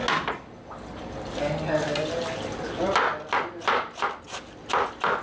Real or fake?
real